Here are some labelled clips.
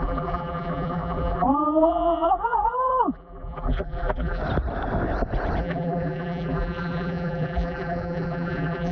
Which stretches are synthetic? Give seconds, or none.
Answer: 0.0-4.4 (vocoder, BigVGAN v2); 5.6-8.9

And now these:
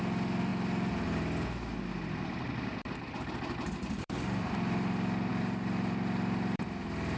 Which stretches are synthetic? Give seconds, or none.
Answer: 0.0-0.5 (vocoder, BigVGAN v2); 3.8-7.2